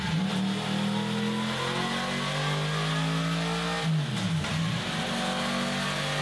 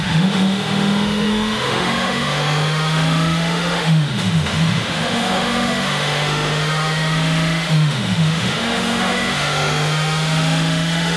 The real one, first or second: first